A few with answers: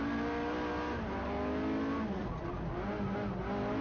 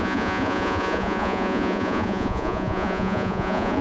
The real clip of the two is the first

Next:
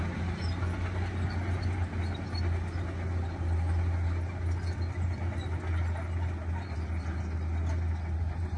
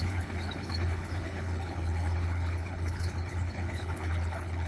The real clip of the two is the first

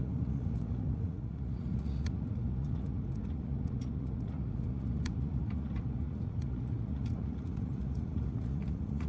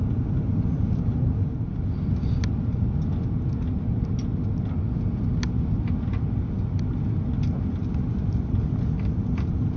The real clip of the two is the second